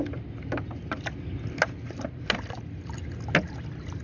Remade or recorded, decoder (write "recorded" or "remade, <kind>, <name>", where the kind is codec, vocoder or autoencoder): recorded